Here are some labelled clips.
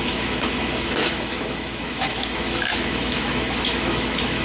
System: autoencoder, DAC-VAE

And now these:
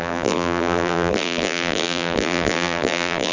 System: vocoder, BigVGAN v2